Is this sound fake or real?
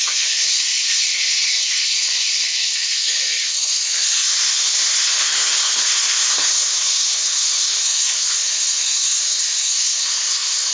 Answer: fake